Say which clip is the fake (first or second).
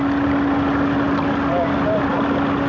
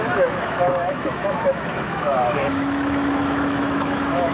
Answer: second